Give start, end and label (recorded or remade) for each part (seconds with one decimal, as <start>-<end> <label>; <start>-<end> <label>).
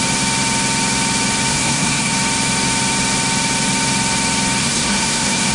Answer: 0.0-1.5 recorded; 1.5-2.1 remade; 2.1-4.6 recorded; 4.6-5.5 remade